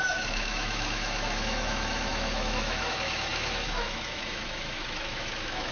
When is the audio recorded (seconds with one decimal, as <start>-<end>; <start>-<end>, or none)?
none